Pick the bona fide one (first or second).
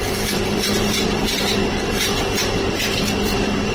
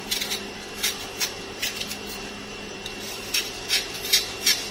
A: second